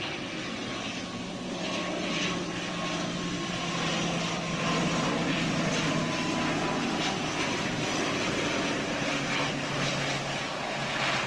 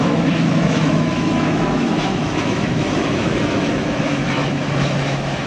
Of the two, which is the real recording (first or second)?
first